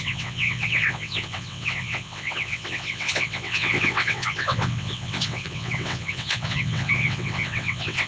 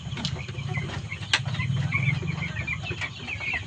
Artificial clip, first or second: first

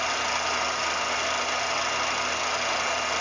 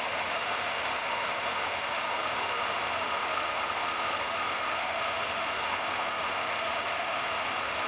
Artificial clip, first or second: second